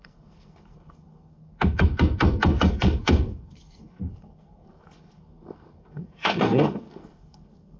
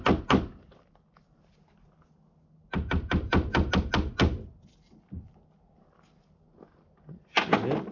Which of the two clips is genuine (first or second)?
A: second